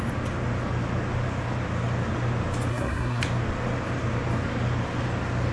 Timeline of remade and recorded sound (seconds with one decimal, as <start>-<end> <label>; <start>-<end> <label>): 0.0-2.7 recorded; 2.7-3.2 remade; 3.2-5.5 recorded